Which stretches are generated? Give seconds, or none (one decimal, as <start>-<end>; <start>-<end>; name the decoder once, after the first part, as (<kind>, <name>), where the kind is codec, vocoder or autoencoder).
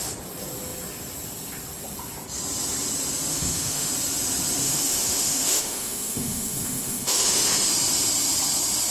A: 3.3-3.9 (autoencoder, DAC-VAE); 4.6-7.7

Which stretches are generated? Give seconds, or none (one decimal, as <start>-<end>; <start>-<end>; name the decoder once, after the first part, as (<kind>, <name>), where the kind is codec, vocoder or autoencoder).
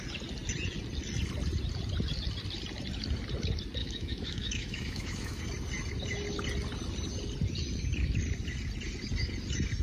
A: 3.8-5.4 (autoencoder, DAC-VAE)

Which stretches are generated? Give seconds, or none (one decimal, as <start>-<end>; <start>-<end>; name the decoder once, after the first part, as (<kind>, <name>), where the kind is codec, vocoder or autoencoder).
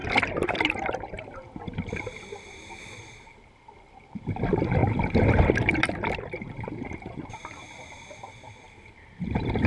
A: none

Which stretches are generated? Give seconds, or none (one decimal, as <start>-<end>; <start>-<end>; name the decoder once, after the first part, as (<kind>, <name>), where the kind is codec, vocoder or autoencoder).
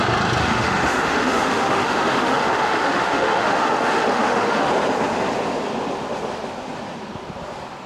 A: 0.4-4.7 (autoencoder, DAC-VAE)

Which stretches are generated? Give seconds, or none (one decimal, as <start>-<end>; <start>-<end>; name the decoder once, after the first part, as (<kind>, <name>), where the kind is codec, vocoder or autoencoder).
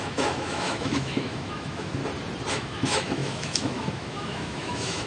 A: 0.0-2.0 (autoencoder, DAC-VAE); 2.5-5.1